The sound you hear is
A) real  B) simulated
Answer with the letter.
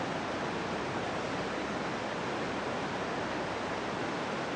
A